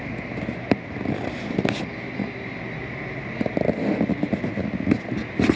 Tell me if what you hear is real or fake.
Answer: real